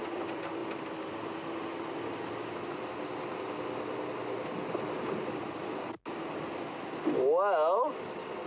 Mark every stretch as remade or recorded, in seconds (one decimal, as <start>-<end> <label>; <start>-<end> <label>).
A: 0.0-8.5 recorded